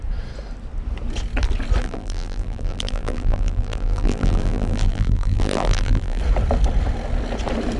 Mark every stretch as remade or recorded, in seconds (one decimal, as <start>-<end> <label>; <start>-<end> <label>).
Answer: 0.0-1.8 recorded; 1.8-6.2 remade; 6.2-7.8 recorded